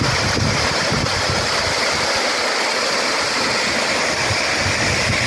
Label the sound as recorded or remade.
recorded